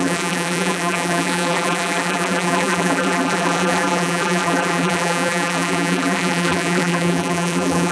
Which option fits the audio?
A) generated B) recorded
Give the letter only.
A